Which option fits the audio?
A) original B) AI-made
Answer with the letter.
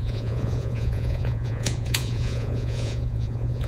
B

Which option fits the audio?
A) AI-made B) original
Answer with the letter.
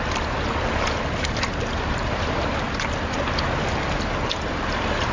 B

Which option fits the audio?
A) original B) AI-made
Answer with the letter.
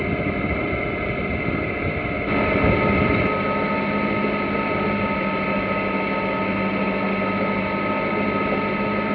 A